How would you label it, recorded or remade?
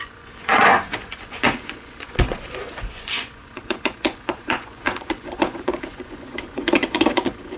remade